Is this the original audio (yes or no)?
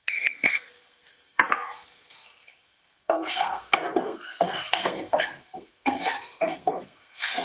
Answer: no